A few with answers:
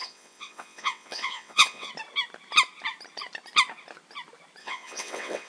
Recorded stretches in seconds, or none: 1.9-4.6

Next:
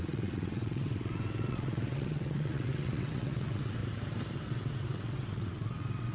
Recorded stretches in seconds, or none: 3.8-4.4

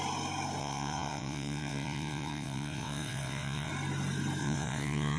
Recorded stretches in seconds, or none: 0.0-0.6; 3.7-4.4

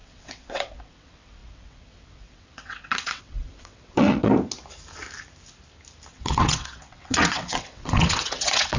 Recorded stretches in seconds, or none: 4.3-6.1

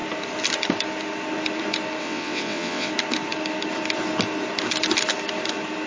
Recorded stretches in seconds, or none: 0.0-2.0; 2.9-5.9

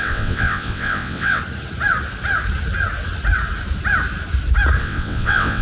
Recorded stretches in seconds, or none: 1.4-4.8

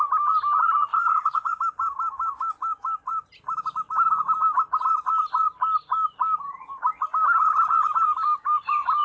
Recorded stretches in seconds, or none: 0.0-0.9; 1.6-9.0

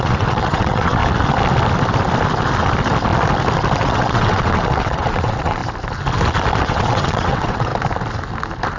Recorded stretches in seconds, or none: 1.0-3.8; 5.6-6.6; 7.7-8.8